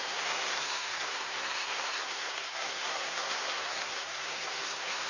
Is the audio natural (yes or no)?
no